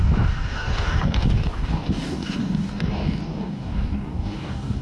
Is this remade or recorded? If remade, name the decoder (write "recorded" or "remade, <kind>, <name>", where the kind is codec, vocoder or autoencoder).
remade, codec, DAC